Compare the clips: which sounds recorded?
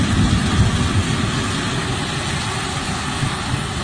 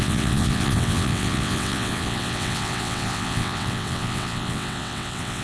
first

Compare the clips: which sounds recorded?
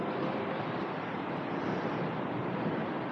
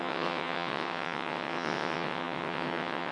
first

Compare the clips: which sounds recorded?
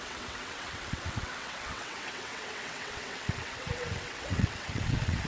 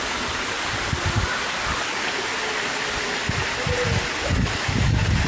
second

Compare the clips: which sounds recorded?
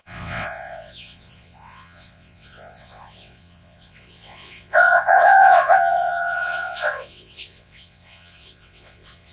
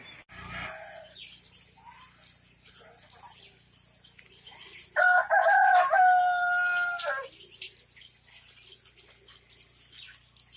second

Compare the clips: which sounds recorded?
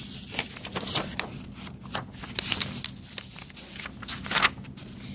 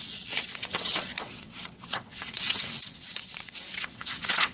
first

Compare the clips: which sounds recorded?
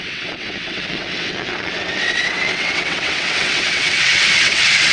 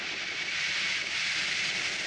second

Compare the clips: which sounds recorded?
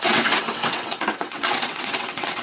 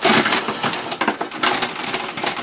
second